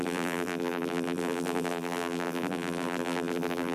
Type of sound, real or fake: fake